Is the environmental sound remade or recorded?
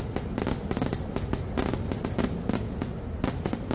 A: recorded